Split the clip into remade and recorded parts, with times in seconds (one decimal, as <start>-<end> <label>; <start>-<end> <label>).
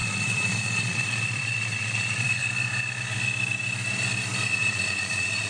0.0-2.4 remade; 2.4-4.5 recorded; 4.5-5.5 remade